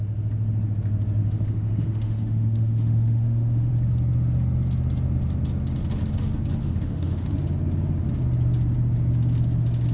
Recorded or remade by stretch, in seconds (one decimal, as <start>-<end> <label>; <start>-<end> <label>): 0.0-1.2 recorded; 1.2-3.7 remade; 3.7-6.6 recorded; 6.6-7.3 remade; 7.3-9.9 recorded